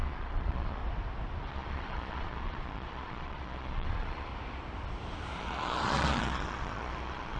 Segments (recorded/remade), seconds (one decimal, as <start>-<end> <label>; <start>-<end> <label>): 0.0-0.8 remade; 0.8-1.5 recorded; 1.5-4.3 remade; 4.3-5.4 recorded; 5.4-7.4 remade